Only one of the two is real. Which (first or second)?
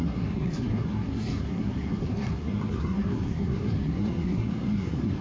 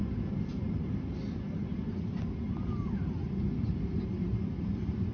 second